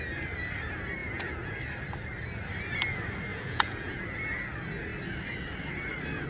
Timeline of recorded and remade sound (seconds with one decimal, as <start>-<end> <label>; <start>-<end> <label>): 0.0-1.0 recorded; 1.0-1.5 remade; 1.5-3.3 recorded; 3.3-4.0 remade; 4.0-6.3 recorded